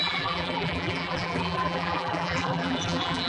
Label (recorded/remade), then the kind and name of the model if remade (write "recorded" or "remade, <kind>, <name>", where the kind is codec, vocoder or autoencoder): remade, vocoder, BigVGAN v2